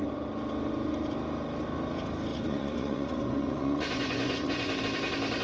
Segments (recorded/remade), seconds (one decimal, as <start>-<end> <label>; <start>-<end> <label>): 0.0-2.3 recorded; 2.3-4.8 remade; 4.8-5.4 recorded